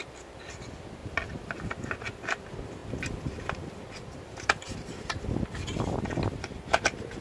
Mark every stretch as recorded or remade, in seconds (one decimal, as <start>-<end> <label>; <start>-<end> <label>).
0.0-7.2 recorded